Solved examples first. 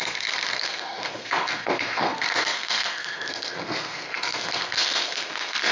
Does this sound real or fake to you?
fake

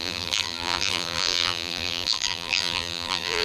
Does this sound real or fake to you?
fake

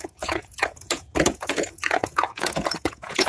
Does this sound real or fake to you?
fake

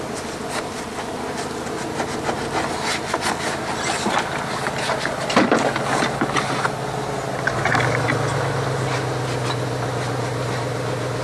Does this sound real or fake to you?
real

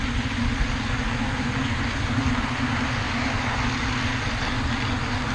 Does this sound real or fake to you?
real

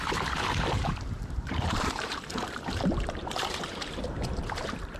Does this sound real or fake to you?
fake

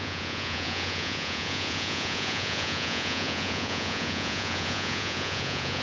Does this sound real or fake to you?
fake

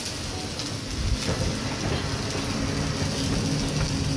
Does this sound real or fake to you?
real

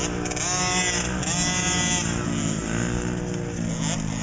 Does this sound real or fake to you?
real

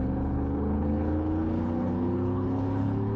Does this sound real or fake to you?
fake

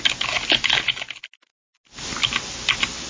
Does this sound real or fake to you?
real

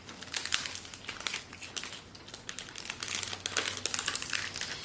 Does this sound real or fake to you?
real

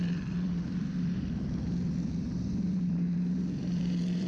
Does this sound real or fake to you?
fake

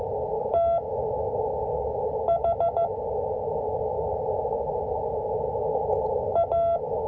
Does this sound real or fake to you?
real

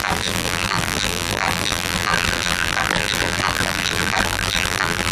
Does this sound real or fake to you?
fake